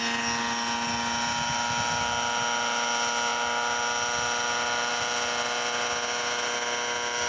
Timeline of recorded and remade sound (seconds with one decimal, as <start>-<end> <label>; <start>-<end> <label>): 0.0-7.3 recorded